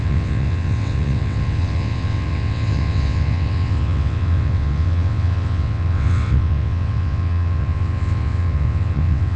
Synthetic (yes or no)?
yes